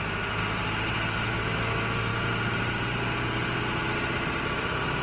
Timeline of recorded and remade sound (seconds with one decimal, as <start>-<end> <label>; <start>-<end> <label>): 0.0-0.4 remade; 0.4-1.3 recorded; 1.3-2.1 remade; 2.1-4.4 recorded; 4.4-5.0 remade